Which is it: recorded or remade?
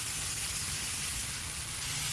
recorded